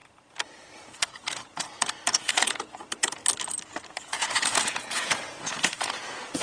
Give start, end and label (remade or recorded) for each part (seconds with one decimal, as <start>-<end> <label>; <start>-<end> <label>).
0.0-0.8 recorded; 0.8-3.2 remade; 3.2-4.0 recorded; 4.0-6.4 remade

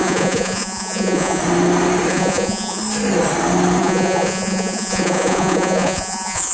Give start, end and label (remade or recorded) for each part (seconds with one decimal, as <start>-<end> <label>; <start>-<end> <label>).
0.0-1.4 remade; 1.4-2.1 recorded; 2.1-2.8 remade; 2.8-3.8 recorded; 3.8-6.5 remade

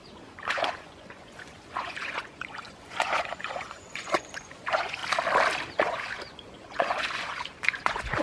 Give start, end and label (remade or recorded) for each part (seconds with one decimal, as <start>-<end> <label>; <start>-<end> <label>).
0.0-5.0 remade; 5.0-5.8 recorded; 5.8-8.2 remade